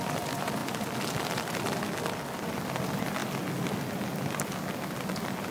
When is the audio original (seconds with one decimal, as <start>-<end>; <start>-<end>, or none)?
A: 3.2-5.5